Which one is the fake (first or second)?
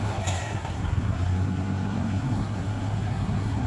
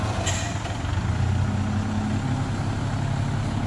first